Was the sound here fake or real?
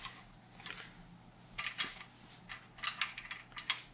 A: real